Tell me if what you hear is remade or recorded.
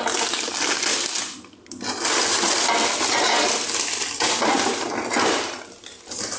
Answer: recorded